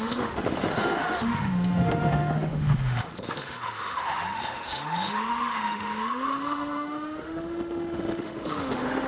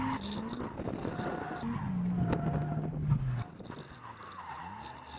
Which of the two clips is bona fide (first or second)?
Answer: second